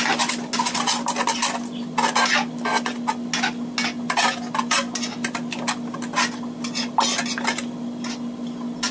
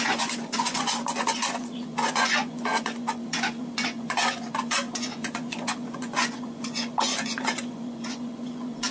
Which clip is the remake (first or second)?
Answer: second